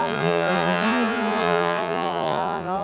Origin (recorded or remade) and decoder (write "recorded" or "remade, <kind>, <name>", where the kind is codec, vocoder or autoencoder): remade, vocoder, Vocos